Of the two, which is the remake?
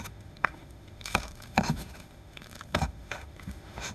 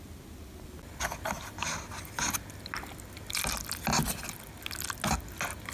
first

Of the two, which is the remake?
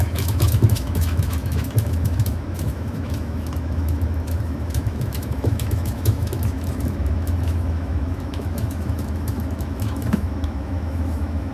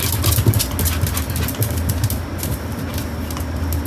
first